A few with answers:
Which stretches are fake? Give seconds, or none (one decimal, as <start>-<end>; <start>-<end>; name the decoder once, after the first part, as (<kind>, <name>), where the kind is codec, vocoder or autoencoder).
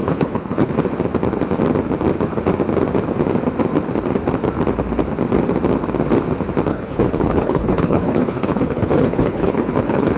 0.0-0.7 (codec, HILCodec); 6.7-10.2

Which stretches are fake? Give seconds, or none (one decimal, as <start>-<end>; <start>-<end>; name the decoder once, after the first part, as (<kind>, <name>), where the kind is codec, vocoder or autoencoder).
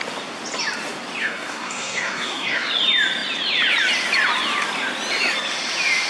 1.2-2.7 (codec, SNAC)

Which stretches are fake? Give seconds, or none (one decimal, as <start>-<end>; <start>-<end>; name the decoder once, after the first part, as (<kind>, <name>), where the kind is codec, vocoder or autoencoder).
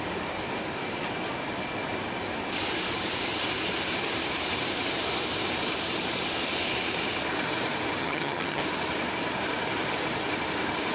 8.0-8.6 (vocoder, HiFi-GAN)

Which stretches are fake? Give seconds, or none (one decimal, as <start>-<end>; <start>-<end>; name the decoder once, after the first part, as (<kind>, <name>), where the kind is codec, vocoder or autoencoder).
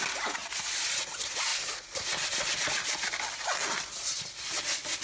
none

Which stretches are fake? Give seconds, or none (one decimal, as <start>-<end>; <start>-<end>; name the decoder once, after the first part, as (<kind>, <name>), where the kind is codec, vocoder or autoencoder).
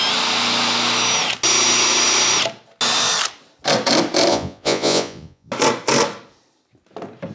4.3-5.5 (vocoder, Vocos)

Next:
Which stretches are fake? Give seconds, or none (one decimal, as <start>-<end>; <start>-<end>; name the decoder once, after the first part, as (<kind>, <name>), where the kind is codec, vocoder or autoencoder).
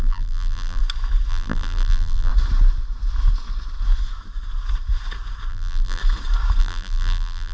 0.0-0.8 (vocoder, BigVGAN v2); 1.3-2.3; 5.5-6.0; 6.6-7.5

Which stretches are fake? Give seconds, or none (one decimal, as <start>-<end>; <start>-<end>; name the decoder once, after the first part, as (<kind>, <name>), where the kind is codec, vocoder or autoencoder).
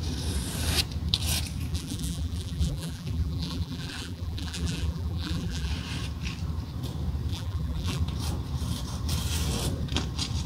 1.7-5.7 (vocoder, BigVGAN v2); 7.3-8.0